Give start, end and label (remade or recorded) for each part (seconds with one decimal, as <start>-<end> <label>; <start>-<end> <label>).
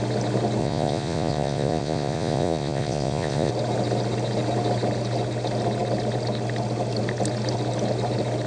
0.0-0.6 recorded; 0.6-3.5 remade; 3.5-8.5 recorded